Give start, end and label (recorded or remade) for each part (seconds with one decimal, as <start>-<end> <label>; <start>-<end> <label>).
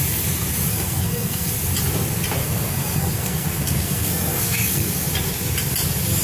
0.0-0.7 recorded; 0.7-1.5 remade; 1.5-2.4 recorded; 2.4-5.0 remade; 5.0-6.2 recorded